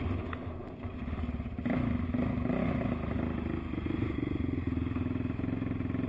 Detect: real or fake real